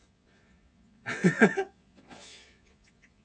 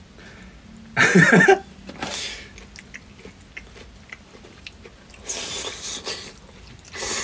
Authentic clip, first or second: second